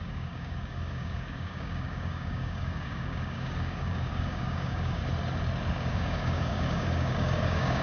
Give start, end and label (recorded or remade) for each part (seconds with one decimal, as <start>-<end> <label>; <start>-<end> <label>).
0.0-5.0 remade; 5.0-5.7 recorded; 5.7-7.8 remade